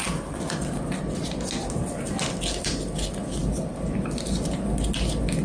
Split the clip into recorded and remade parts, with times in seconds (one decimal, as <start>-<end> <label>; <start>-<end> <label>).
0.0-5.4 recorded